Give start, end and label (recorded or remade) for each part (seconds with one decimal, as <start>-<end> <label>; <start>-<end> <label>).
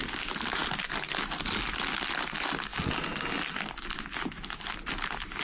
0.0-5.4 recorded